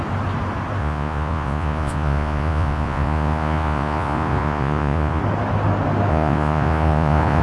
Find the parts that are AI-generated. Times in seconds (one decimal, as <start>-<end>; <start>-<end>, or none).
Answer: 0.8-5.2; 6.1-7.4